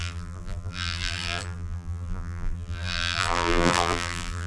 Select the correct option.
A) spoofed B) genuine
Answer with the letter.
A